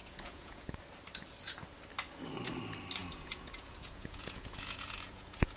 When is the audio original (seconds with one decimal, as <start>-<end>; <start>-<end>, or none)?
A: 0.8-3.0